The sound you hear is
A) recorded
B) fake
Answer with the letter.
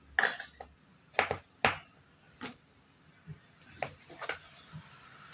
A